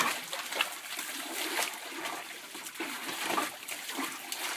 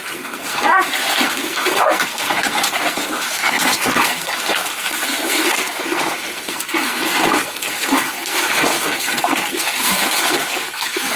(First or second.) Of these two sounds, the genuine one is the first